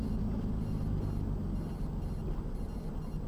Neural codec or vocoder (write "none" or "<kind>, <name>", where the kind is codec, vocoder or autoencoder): none